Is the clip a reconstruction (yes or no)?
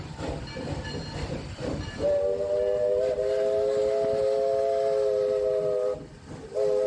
no